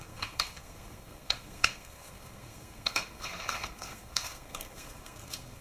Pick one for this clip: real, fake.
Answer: fake